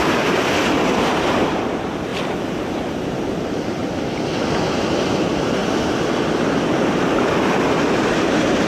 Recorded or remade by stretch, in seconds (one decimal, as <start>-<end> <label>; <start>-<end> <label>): 0.0-2.1 remade; 2.1-2.8 recorded; 2.8-3.8 remade; 3.8-4.7 recorded; 4.7-5.6 remade; 5.6-7.6 recorded; 7.6-8.7 remade

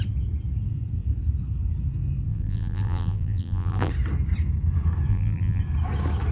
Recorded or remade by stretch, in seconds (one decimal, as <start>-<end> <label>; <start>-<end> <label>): 0.0-2.3 recorded; 2.3-3.9 remade; 3.9-5.1 recorded; 5.1-5.6 remade; 5.6-6.3 recorded